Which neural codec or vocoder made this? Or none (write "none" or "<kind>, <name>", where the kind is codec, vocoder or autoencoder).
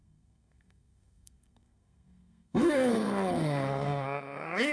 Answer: codec, SNAC